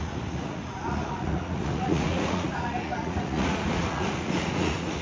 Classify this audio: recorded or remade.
remade